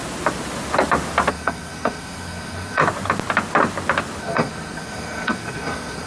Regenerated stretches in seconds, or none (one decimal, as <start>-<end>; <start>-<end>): 1.3-2.8; 4.2-6.1